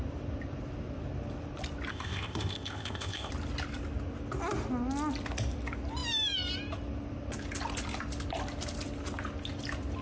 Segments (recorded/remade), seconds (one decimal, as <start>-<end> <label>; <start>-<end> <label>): 0.0-1.9 recorded; 1.9-3.3 remade; 3.3-10.0 recorded